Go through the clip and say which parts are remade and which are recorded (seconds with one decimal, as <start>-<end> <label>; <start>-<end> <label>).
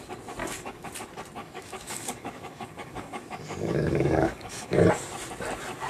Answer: 0.0-0.4 recorded; 0.4-0.9 remade; 0.9-1.4 recorded; 1.4-4.9 remade; 4.9-5.9 recorded